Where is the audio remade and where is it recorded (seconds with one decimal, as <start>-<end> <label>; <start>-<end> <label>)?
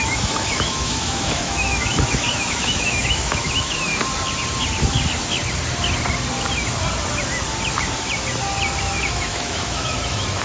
0.0-3.9 remade; 3.9-8.8 recorded; 8.8-10.4 remade